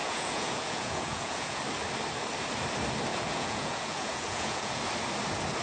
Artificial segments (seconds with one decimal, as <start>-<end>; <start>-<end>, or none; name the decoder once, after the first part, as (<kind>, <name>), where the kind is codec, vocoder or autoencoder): 0.0-1.6 (vocoder, Vocos); 3.1-4.8